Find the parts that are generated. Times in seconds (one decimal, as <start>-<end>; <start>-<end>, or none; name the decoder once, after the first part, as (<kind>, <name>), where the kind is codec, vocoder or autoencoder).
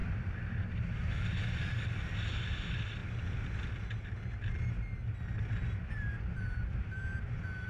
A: none